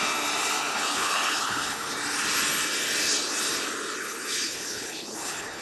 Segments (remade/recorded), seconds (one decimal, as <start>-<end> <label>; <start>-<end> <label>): 0.0-0.7 recorded; 0.7-1.9 remade; 1.9-4.0 recorded; 4.0-5.6 remade